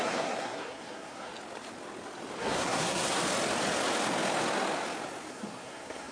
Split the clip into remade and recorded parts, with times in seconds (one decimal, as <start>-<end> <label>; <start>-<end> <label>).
0.0-1.3 remade; 1.3-2.4 recorded; 2.4-3.2 remade; 3.2-5.3 recorded; 5.3-6.1 remade